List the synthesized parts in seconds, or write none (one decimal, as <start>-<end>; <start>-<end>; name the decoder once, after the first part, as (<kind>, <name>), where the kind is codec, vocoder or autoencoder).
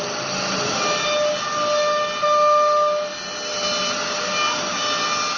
none